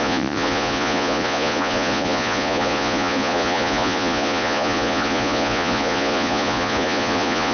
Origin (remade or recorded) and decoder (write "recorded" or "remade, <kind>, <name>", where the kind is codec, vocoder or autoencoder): remade, vocoder, Vocos